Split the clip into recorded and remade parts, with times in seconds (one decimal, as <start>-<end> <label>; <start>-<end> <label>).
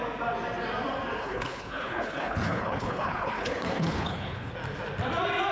0.0-1.2 recorded; 1.2-4.5 remade; 4.5-5.5 recorded